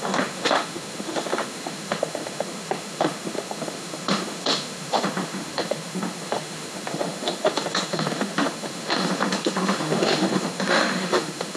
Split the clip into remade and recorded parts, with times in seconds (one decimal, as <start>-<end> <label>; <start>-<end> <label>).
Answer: 0.0-11.6 remade